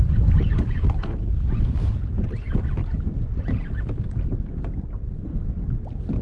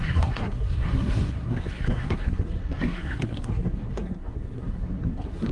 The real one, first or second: first